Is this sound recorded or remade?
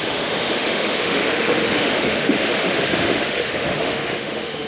remade